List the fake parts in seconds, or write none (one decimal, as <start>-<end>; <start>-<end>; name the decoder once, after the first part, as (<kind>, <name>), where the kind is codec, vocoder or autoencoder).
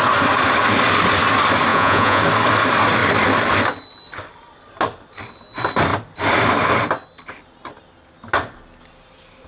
1.7-2.2 (vocoder, Vocos)